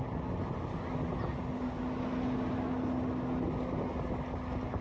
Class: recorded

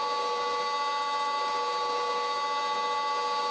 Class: recorded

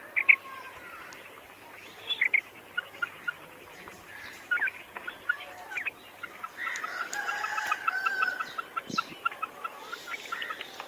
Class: recorded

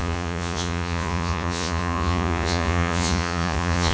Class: remade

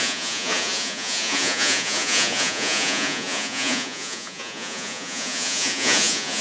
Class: remade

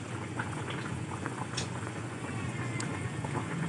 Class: remade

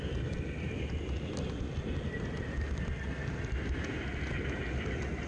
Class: recorded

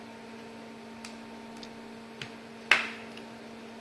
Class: recorded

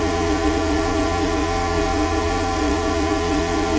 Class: remade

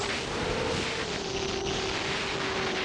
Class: recorded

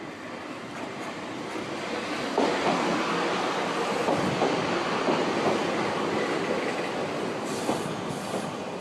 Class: recorded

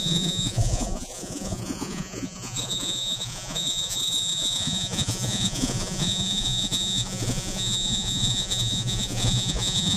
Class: remade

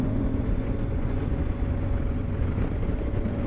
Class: remade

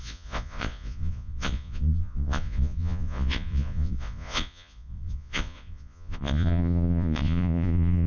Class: remade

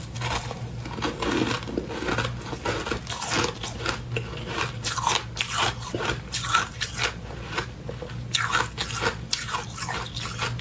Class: recorded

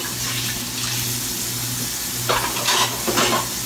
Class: recorded